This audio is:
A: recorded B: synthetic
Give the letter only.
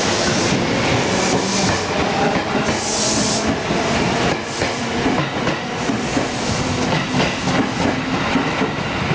A